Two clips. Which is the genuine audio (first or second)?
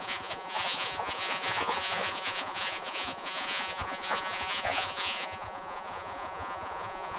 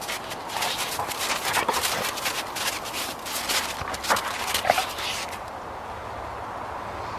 second